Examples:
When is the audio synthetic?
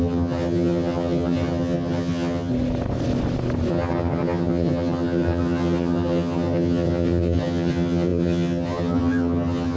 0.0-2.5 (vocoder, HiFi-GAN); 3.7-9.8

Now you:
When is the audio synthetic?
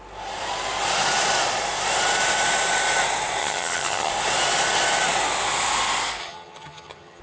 3.4-4.1 (vocoder, HiFi-GAN); 6.2-7.2